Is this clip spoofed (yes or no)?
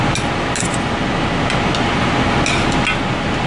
no